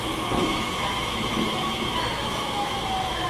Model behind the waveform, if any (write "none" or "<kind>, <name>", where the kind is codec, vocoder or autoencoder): autoencoder, DAC-VAE